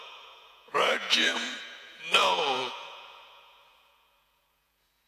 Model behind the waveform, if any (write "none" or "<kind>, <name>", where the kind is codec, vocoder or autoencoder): vocoder, Vocos